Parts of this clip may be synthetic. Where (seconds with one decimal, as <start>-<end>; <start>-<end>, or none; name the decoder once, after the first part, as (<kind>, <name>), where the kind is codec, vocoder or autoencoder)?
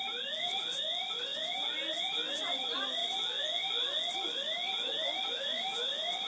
none